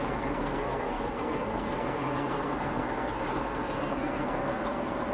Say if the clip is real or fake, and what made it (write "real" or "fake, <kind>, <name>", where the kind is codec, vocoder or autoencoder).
fake, codec, SNAC